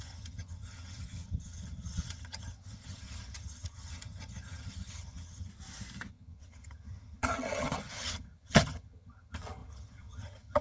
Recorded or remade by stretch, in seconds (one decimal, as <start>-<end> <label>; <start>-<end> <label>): 0.0-5.5 remade; 5.5-6.1 recorded; 6.1-10.6 remade